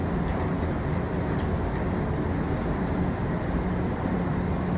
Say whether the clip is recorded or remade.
recorded